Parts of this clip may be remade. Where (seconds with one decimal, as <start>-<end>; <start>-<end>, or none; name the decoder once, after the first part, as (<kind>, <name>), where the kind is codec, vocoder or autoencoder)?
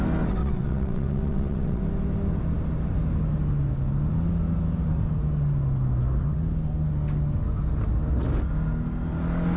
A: 0.4-1.8 (vocoder, WaveNeXt)